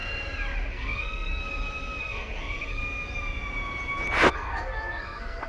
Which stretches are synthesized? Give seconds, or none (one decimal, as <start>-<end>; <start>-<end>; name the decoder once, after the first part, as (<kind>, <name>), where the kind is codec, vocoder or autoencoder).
0.7-1.4 (codec, SNAC); 2.0-2.8; 4.3-5.5